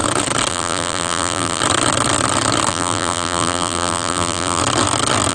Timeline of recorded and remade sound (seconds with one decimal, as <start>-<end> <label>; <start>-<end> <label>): 0.0-0.5 recorded; 0.5-1.6 remade; 1.6-2.7 recorded; 2.7-4.6 remade; 4.6-5.3 recorded